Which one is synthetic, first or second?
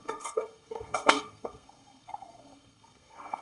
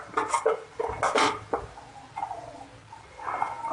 first